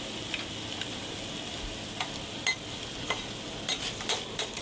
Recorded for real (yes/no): yes